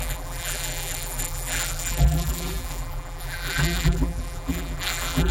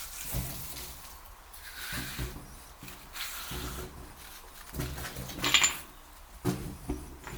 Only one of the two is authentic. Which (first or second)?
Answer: second